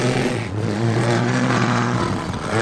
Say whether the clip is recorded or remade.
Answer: remade